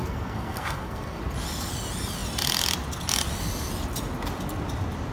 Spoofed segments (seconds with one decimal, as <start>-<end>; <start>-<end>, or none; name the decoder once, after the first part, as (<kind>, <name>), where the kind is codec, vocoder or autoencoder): 0.0-1.2 (codec, SNAC)